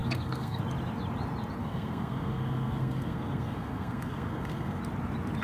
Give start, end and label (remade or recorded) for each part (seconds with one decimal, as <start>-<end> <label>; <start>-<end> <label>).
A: 0.0-0.6 remade; 0.6-1.6 recorded; 1.6-4.8 remade; 4.8-5.4 recorded